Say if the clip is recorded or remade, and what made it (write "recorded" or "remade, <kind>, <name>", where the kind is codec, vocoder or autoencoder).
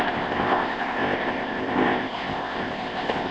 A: remade, codec, ZipCodec